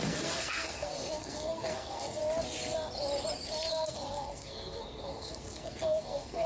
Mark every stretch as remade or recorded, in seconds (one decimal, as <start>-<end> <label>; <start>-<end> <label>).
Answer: 0.0-2.2 remade; 2.2-3.7 recorded; 3.7-6.5 remade